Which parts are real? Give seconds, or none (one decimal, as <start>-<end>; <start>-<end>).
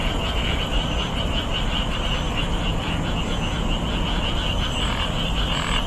0.6-2.4; 4.5-5.9